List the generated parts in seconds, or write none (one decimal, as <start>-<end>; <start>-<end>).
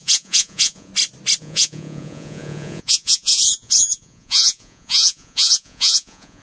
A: 0.0-0.9; 1.4-6.4